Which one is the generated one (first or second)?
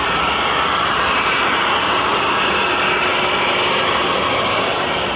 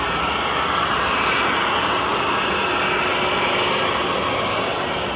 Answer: first